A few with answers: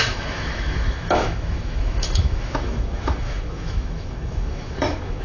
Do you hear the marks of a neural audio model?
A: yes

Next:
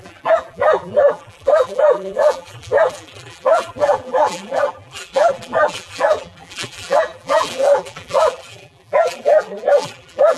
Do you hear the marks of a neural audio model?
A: yes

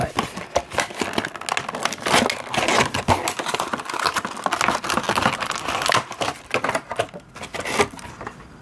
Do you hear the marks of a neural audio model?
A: no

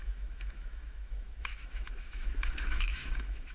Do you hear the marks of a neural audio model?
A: yes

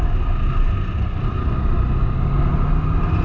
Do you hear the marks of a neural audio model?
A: no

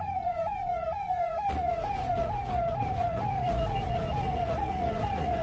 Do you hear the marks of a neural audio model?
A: yes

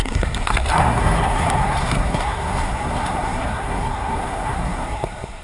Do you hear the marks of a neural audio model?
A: yes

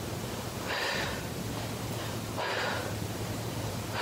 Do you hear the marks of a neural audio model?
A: yes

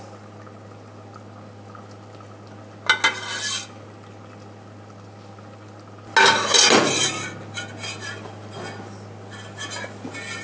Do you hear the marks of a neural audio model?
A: no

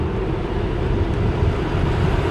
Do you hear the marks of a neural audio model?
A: yes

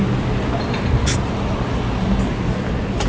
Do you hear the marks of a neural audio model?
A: no